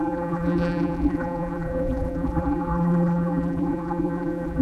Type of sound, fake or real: fake